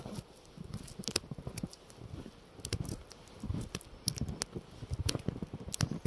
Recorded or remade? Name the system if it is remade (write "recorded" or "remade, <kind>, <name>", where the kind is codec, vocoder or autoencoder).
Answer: recorded